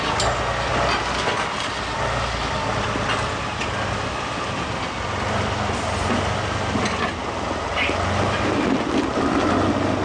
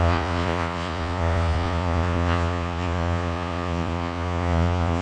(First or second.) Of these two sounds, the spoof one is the second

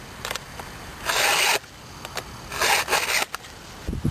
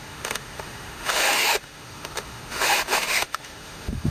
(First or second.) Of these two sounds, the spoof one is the second